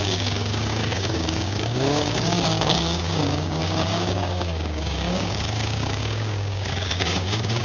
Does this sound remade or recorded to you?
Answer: remade